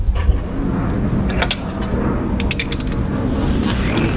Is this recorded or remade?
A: recorded